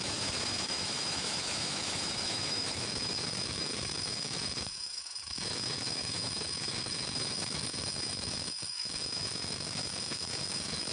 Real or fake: fake